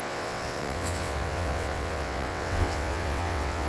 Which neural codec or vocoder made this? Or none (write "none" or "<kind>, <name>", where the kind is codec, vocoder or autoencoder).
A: vocoder, WaveNeXt